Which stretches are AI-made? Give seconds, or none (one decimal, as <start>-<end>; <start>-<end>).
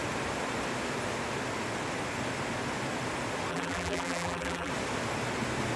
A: 3.5-4.7